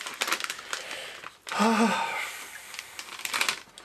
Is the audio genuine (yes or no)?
yes